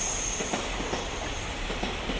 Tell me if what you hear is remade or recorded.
recorded